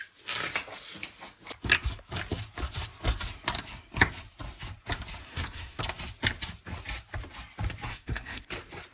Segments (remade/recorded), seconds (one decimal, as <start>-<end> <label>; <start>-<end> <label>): 0.0-5.2 recorded; 5.2-5.8 remade; 5.8-7.9 recorded; 7.9-8.5 remade; 8.5-8.9 recorded